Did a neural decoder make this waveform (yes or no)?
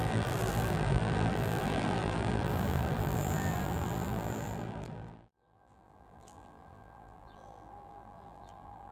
yes